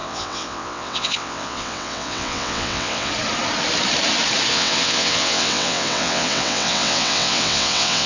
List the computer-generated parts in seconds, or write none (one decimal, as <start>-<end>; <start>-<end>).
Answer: 0.0-3.1; 4.5-8.1

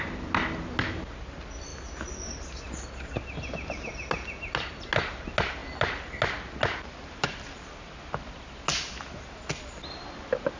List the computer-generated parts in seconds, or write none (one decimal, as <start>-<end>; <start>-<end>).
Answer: none

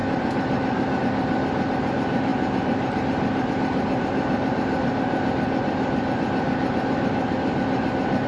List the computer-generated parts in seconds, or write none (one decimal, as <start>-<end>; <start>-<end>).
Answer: none

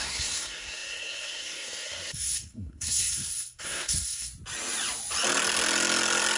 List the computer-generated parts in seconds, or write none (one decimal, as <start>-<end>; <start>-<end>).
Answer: 0.0-4.3